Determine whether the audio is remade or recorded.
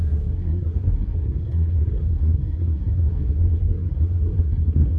remade